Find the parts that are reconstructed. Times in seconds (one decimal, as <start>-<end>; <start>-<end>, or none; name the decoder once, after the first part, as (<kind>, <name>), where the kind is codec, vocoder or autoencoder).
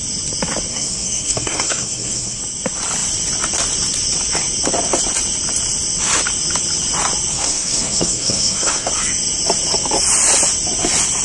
0.7-2.4 (codec, SNAC); 7.3-8.9